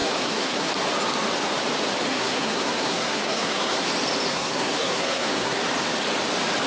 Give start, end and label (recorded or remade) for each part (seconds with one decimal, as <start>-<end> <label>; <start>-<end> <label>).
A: 0.0-0.7 remade; 0.7-2.1 recorded; 2.1-3.9 remade; 3.9-4.3 recorded; 4.3-5.6 remade; 5.6-6.7 recorded